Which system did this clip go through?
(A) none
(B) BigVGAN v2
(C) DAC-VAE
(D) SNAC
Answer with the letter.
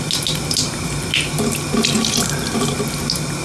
A